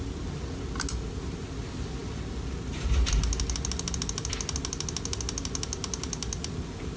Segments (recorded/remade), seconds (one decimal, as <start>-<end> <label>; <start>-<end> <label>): 0.0-7.0 recorded